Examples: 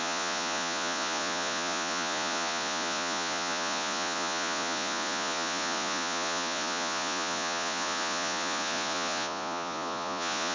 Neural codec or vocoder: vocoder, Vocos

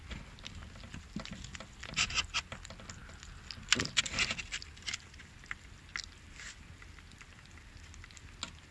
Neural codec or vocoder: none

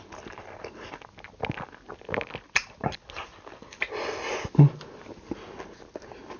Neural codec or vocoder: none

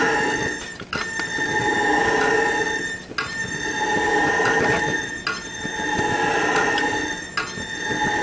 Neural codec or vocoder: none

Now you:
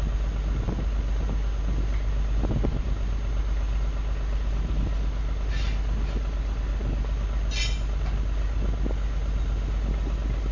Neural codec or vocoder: none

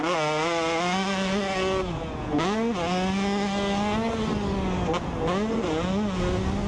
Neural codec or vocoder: none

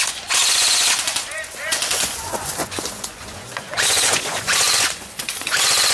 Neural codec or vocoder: vocoder, Vocos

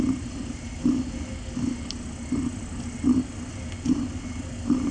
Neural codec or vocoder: none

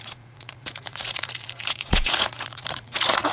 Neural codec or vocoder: vocoder, Vocos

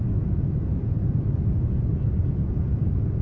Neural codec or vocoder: vocoder, Vocos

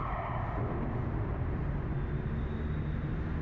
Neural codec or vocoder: none